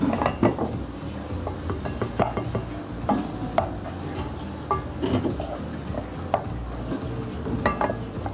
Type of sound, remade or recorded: recorded